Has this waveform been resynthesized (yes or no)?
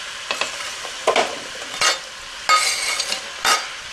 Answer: no